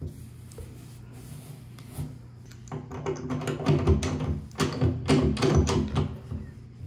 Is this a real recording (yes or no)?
yes